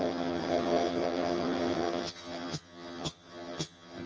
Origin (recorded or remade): remade